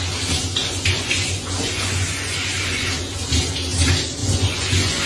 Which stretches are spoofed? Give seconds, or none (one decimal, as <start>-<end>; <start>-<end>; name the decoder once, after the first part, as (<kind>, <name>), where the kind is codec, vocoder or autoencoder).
0.6-2.9 (vocoder, Vocos); 4.2-5.1

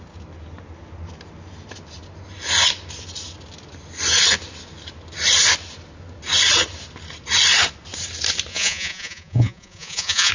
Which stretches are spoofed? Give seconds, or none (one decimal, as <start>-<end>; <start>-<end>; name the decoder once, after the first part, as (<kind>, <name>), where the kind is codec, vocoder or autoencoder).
8.5-10.3 (vocoder, Vocos)

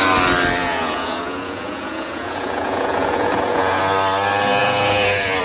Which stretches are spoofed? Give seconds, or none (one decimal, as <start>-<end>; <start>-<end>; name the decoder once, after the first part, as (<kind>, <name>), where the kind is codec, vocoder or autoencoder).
0.6-3.8 (vocoder, Vocos); 4.6-5.4